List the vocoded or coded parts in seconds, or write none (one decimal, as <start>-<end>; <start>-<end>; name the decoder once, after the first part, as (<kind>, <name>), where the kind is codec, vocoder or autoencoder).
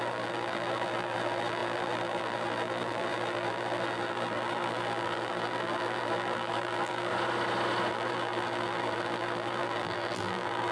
0.0-7.1 (vocoder, BigVGAN v2); 7.9-10.7